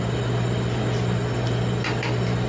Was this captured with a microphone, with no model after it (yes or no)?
yes